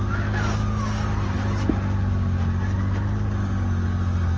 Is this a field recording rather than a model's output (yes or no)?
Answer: yes